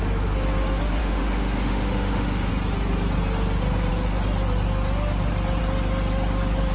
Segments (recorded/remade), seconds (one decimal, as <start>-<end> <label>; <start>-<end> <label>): 0.0-1.0 recorded; 1.0-2.5 remade; 2.5-6.7 recorded